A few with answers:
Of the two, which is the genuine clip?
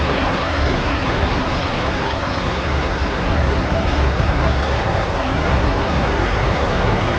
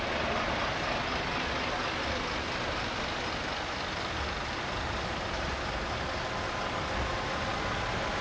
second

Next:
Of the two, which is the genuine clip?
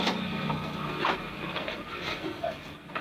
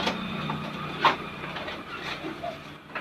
second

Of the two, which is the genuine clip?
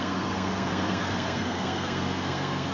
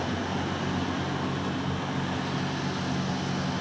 second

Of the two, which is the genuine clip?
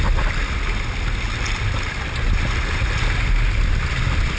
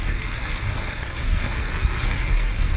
first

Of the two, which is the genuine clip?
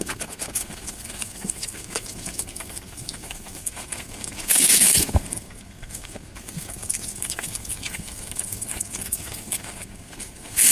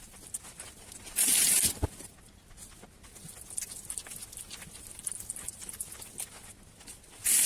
second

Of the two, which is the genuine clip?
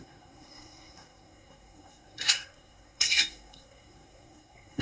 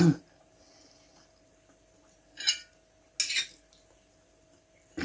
second